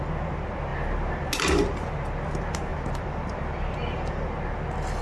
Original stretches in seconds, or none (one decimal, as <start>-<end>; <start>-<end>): 0.0-2.7; 4.1-5.0